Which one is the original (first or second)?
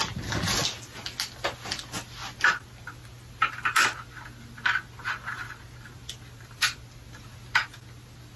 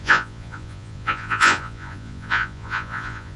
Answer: first